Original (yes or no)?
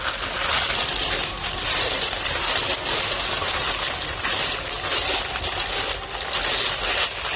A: yes